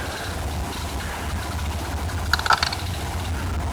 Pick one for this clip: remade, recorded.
recorded